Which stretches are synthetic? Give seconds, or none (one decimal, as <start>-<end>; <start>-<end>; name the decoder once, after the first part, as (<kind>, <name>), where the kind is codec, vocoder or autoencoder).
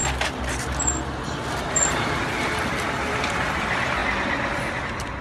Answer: 1.6-4.0 (vocoder, BigVGAN v2); 4.8-5.2